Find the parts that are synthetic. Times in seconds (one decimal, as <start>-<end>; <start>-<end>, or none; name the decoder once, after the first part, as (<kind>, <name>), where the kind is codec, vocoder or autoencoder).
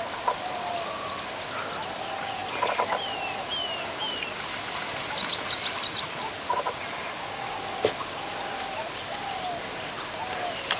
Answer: none